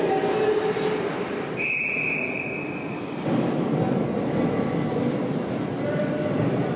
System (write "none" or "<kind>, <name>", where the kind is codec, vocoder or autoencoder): none